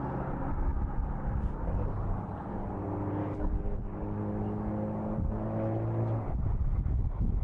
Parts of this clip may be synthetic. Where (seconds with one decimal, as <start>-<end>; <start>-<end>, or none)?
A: 3.2-4.2